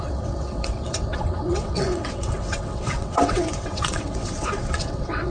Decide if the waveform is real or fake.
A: fake